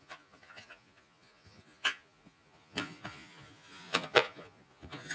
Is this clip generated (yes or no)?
yes